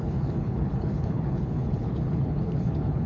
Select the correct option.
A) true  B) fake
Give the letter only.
B